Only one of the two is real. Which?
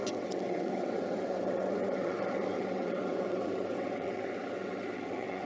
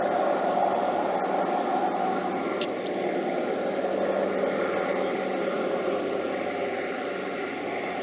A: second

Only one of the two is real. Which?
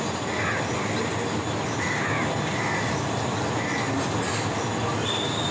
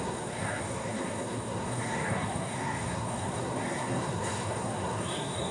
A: first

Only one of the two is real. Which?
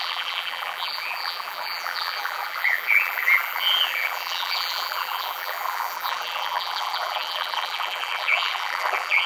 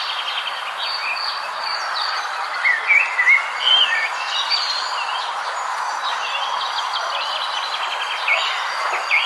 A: second